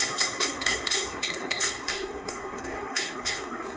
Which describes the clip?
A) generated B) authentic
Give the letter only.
A